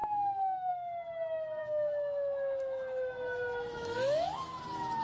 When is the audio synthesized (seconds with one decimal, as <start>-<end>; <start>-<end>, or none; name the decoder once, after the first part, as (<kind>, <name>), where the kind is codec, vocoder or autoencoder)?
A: 0.0-0.7 (autoencoder, DAC-VAE); 1.6-4.6